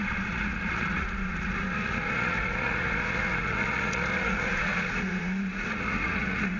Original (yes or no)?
no